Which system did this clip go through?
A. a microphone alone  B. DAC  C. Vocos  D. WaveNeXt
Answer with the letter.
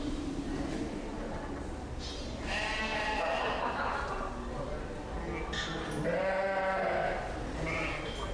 A